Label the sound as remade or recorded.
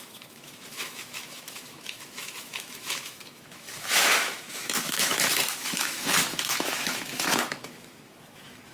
remade